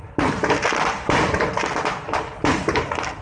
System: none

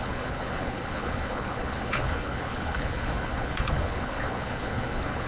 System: codec, HILCodec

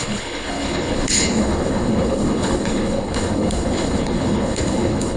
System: codec, HILCodec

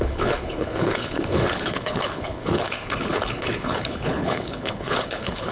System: codec, HILCodec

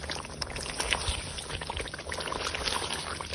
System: none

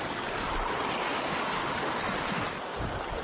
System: none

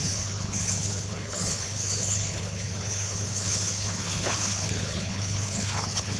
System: codec, HILCodec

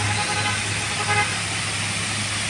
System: none